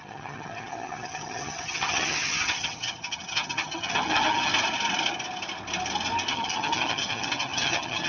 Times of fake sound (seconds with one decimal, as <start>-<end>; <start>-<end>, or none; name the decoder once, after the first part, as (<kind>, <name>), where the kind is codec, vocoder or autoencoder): 0.0-4.5 (vocoder, HiFi-GAN); 6.3-8.1